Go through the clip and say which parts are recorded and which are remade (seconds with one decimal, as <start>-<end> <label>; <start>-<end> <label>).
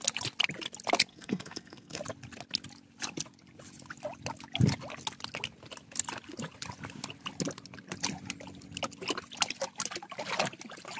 0.0-1.1 recorded; 1.1-2.0 remade; 2.0-11.0 recorded